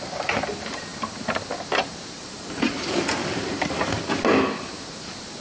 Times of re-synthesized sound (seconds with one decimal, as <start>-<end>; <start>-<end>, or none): 2.2-2.8; 3.2-4.0